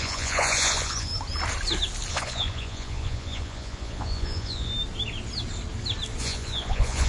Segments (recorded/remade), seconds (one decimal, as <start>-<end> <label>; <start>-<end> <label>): 0.0-1.1 remade; 1.1-2.1 recorded; 2.1-4.7 remade; 4.7-6.2 recorded; 6.2-7.1 remade